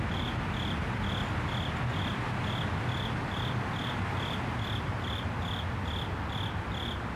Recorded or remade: recorded